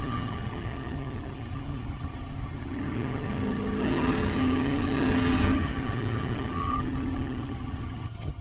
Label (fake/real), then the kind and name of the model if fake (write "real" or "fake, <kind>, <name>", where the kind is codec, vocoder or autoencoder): fake, vocoder, HiFi-GAN